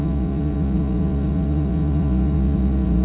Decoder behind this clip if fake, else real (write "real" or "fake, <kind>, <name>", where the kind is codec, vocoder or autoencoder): fake, vocoder, Vocos